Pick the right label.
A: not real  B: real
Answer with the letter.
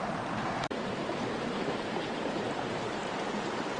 A